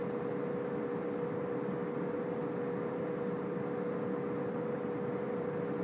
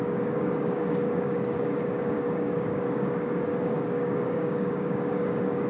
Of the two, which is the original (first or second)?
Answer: first